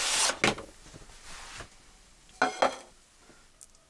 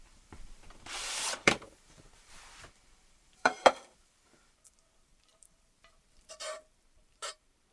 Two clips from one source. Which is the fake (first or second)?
second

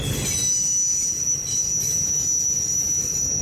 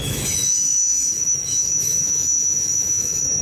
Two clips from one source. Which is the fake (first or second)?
second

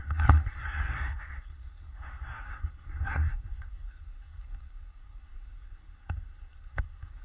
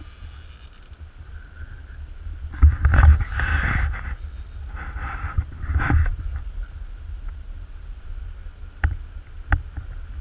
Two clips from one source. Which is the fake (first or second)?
first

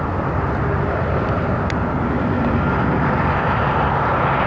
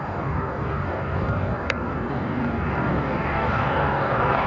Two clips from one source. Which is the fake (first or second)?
second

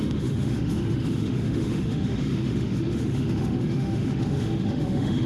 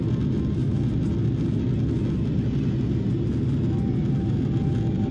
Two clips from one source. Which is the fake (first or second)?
first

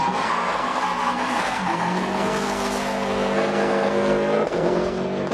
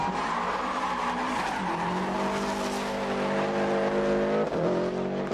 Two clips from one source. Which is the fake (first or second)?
first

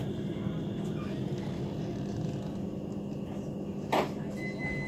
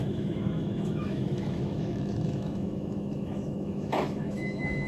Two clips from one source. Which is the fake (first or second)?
second